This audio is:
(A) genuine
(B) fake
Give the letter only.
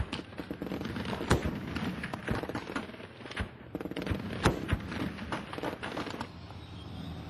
A